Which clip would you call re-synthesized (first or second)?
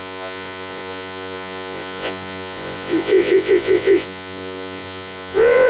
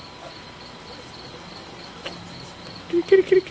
first